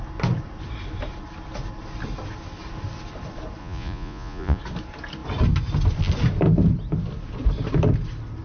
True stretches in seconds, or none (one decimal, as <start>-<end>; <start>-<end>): 0.0-3.6; 4.6-8.4